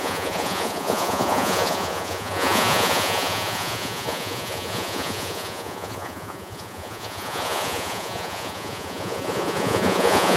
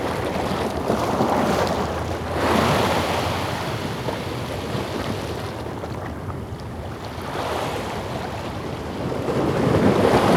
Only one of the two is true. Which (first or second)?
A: second